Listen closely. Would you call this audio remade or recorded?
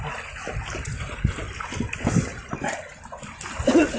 recorded